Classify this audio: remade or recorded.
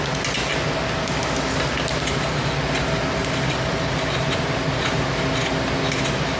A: recorded